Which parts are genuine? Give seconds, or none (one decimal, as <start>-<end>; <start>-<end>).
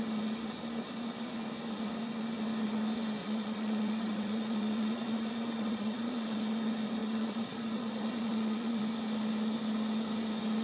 0.0-3.2; 6.4-7.0; 8.8-10.6